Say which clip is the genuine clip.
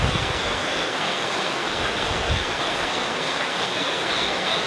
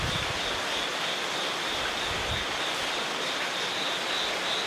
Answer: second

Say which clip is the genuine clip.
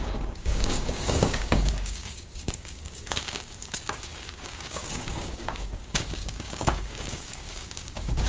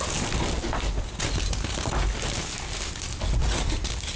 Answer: second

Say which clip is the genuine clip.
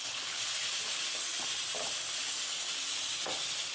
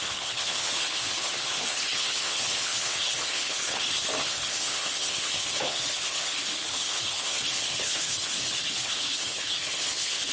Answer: first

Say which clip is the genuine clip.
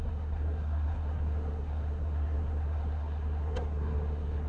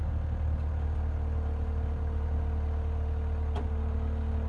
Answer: second